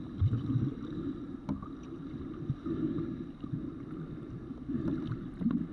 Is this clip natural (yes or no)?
yes